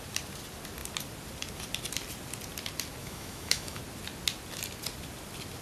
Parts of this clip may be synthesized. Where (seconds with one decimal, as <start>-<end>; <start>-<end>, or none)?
3.0-3.8